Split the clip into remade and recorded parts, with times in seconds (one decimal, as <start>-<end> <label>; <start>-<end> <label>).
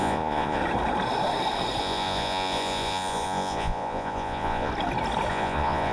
0.0-0.6 remade; 0.6-1.8 recorded; 1.8-4.7 remade; 4.7-5.3 recorded; 5.3-5.9 remade